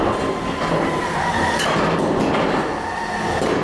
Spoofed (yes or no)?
no